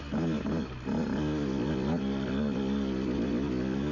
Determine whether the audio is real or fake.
real